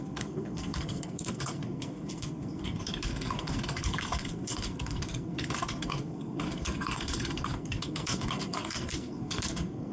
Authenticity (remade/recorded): remade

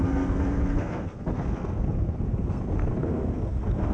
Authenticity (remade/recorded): remade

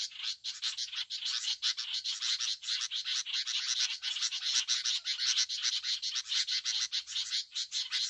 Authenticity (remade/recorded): recorded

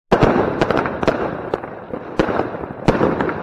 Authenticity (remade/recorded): recorded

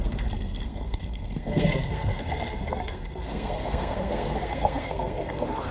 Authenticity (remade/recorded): remade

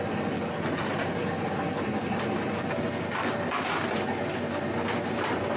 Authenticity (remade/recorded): recorded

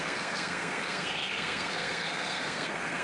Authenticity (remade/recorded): remade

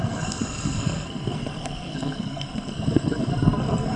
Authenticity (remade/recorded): remade